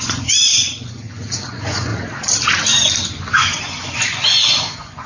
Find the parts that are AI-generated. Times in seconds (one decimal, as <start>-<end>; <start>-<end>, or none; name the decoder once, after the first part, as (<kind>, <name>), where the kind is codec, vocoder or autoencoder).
0.0-1.9 (vocoder, Vocos); 3.1-5.1